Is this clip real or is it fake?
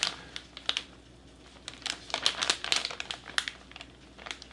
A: real